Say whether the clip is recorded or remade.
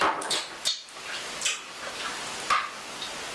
recorded